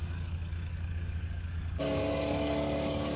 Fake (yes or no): yes